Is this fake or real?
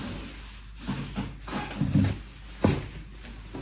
real